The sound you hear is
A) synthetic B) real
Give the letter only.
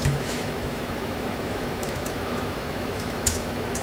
A